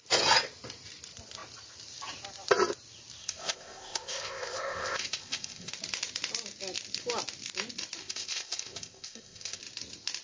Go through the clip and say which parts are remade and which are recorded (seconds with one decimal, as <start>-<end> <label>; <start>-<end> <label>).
0.0-3.2 recorded; 3.2-5.7 remade; 5.7-8.0 recorded; 8.0-9.6 remade; 9.6-10.2 recorded